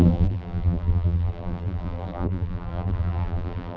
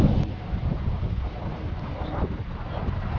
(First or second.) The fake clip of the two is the first